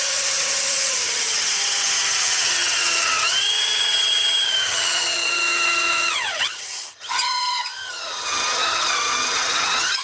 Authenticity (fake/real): fake